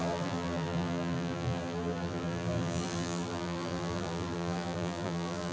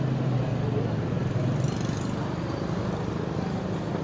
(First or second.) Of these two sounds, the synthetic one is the first